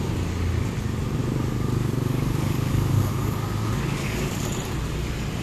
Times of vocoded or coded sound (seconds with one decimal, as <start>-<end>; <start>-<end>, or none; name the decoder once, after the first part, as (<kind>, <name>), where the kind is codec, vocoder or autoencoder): 1.2-4.4 (codec, DAC)